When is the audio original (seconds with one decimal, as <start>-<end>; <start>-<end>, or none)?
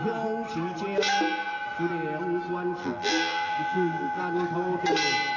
0.0-2.8; 4.2-5.4